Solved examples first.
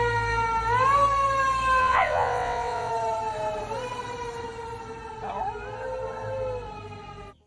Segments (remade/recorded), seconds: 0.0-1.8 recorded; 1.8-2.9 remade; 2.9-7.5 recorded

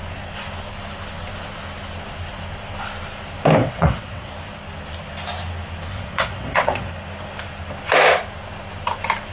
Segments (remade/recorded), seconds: 0.0-3.6 recorded; 3.6-4.3 remade; 4.3-5.9 recorded; 5.9-6.9 remade; 6.9-9.3 recorded

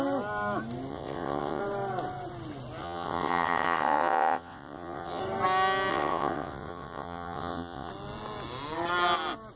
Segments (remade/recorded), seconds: 0.0-0.9 recorded; 0.9-1.6 remade; 1.6-2.8 recorded; 2.8-5.2 remade; 5.2-5.9 recorded; 5.9-7.9 remade; 7.9-9.6 recorded

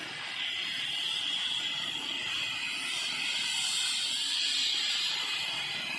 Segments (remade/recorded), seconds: 0.0-1.1 recorded; 1.1-1.6 remade; 1.6-6.0 recorded